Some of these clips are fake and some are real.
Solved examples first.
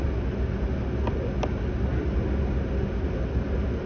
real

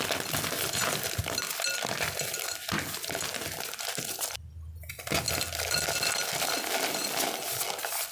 real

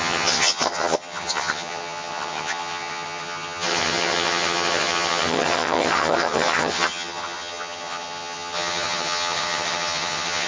fake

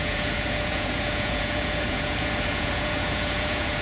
fake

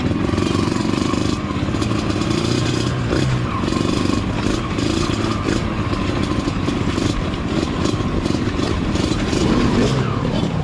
fake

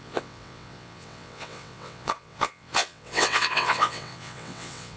fake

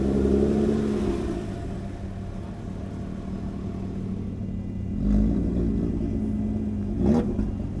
real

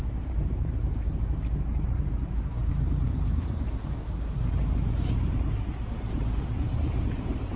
fake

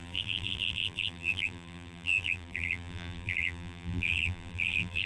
fake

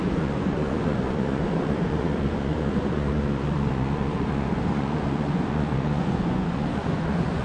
fake